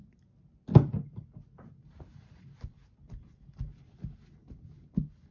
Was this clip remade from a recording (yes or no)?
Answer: no